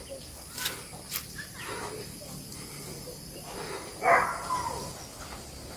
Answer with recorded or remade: recorded